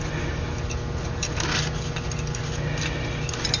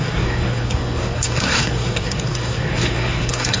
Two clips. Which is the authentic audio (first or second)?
first